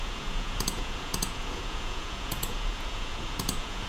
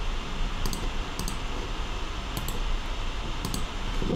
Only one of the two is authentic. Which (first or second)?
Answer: second